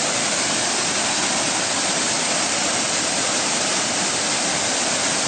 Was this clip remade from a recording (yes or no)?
no